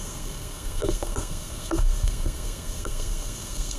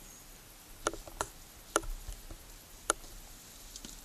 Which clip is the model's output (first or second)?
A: first